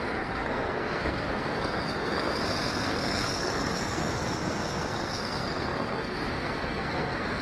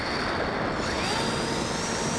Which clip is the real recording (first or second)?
second